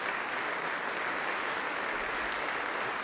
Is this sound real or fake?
real